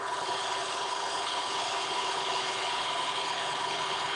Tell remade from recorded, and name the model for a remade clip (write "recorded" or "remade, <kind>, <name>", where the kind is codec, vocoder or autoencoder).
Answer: remade, codec, HILCodec